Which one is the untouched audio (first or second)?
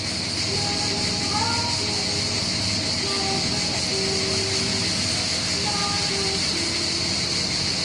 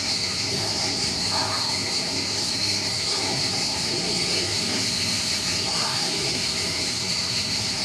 first